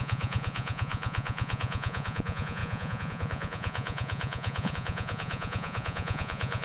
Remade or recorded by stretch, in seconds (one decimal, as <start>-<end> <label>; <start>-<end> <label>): 0.0-6.6 remade